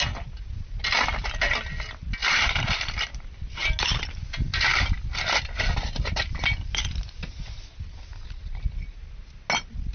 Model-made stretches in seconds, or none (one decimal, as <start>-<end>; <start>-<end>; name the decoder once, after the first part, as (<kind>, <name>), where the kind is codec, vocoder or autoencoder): 2.2-3.0 (vocoder, BigVGAN v2); 4.7-6.8

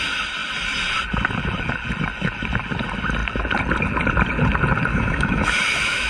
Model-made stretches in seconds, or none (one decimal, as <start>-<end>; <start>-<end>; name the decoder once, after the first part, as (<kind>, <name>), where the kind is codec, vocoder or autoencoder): 4.9-6.1 (autoencoder, DAC-VAE)

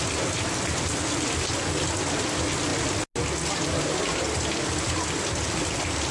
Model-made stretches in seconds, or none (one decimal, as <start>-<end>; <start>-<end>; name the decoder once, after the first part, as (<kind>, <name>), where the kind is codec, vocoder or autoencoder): none

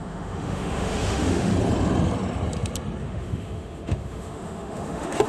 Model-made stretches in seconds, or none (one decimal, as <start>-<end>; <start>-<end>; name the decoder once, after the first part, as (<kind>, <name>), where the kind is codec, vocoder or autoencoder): 0.0-1.5 (autoencoder, DAC-VAE); 3.0-5.3